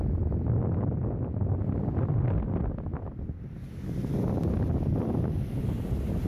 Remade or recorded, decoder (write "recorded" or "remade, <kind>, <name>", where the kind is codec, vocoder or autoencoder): recorded